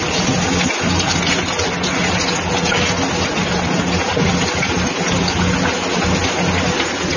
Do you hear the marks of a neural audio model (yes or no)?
no